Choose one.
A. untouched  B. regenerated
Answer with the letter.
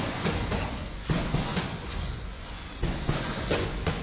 B